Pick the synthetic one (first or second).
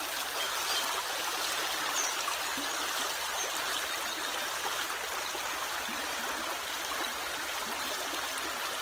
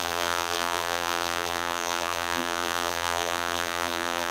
second